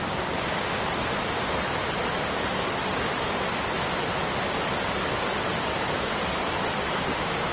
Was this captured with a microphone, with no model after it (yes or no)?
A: yes